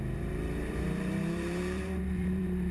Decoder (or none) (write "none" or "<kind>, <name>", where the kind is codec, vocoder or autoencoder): vocoder, BigVGAN v2